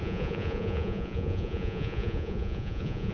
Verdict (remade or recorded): remade